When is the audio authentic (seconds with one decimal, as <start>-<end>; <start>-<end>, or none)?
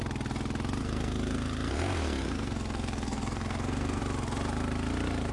0.0-0.8; 4.0-5.3